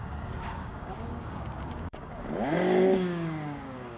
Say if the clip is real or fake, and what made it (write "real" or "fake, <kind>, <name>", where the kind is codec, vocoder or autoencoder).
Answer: fake, codec, DAC